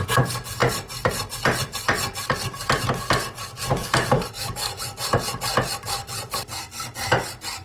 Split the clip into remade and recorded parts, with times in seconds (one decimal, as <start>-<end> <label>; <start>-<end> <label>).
0.0-3.8 recorded; 3.8-4.8 remade; 4.8-7.6 recorded